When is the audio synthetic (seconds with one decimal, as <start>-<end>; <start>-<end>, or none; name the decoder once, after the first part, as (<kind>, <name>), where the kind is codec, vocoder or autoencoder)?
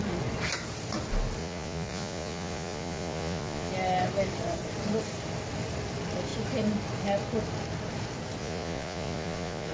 1.4-3.7 (vocoder, Vocos); 8.4-9.7